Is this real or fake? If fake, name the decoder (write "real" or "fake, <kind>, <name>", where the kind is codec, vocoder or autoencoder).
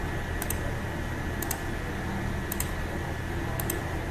real